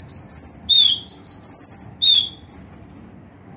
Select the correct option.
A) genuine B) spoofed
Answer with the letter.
A